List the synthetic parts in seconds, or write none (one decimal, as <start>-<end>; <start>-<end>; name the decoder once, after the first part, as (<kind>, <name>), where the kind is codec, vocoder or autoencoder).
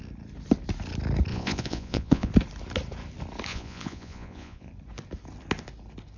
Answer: 1.3-2.3 (vocoder, Vocos); 3.5-4.7